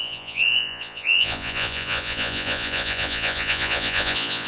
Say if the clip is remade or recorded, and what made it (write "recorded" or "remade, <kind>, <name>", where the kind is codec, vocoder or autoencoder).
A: remade, vocoder, Vocos